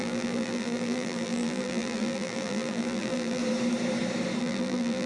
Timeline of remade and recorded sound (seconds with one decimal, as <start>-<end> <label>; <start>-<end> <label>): 0.0-3.4 remade; 3.4-4.4 recorded; 4.4-5.1 remade